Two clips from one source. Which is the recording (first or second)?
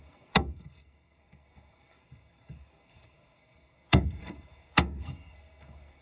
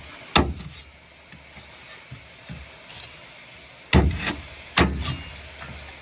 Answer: second